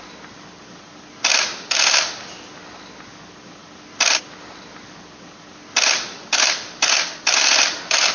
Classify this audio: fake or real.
real